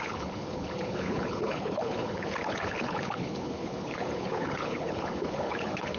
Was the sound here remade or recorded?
remade